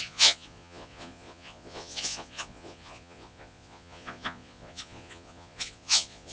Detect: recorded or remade remade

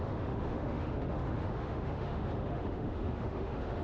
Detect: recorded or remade remade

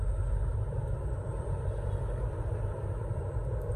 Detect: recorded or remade remade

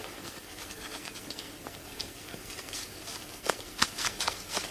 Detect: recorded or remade remade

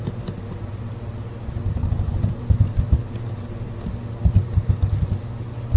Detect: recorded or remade recorded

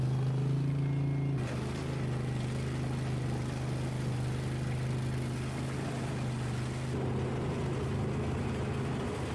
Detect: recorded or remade recorded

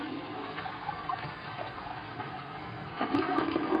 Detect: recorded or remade remade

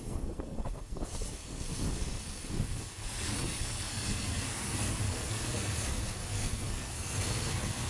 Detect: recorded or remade remade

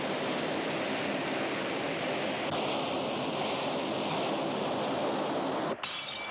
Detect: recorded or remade recorded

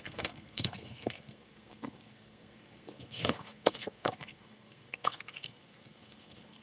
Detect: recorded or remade remade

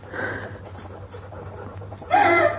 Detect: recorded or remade recorded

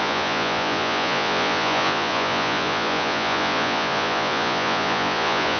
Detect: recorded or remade remade